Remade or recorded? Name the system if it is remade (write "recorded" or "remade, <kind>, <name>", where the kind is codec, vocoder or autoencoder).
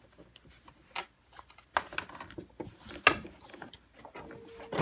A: recorded